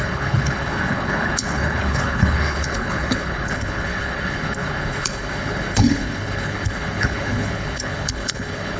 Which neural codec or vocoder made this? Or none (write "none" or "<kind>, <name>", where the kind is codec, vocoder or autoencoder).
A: codec, HILCodec